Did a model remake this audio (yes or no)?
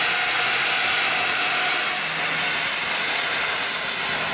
no